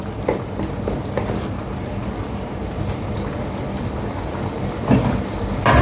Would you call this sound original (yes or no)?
yes